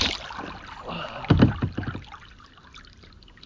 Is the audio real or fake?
real